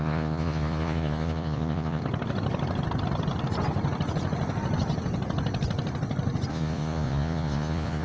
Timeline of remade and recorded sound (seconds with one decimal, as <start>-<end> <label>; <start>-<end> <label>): 0.0-2.0 remade; 2.0-6.5 recorded; 6.5-8.0 remade